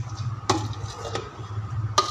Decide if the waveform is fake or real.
real